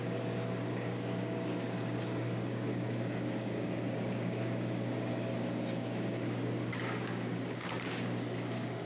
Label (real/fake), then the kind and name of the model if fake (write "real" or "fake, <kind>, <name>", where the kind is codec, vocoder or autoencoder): fake, codec, DAC